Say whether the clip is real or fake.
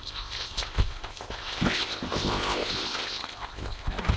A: fake